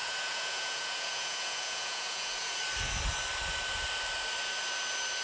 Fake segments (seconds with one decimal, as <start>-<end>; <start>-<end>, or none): 0.0-2.6